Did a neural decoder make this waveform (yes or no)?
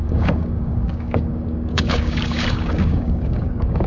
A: yes